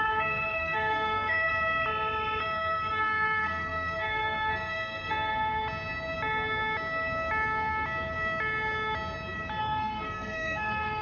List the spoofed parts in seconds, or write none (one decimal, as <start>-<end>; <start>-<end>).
0.0-1.5; 2.4-5.3; 9.6-11.0